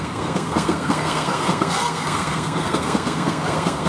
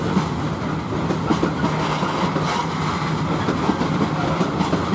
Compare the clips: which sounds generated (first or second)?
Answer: first